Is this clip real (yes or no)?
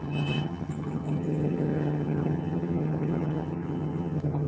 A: no